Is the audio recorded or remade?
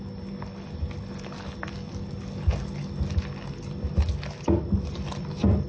recorded